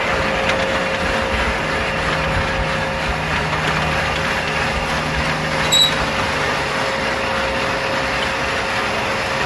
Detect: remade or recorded recorded